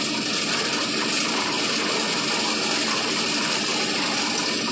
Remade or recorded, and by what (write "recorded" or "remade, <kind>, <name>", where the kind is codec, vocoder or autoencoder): recorded